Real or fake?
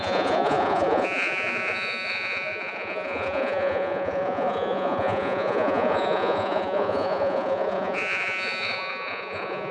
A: fake